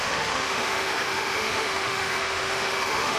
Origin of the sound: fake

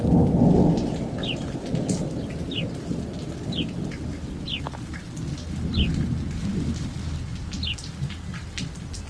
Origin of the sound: real